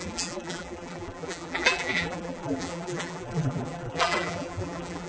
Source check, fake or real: fake